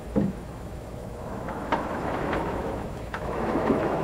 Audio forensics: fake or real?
fake